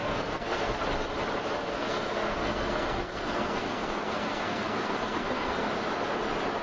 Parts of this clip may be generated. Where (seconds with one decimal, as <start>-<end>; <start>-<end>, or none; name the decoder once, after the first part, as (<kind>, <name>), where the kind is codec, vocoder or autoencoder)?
0.0-0.8 (codec, SNAC); 1.7-5.7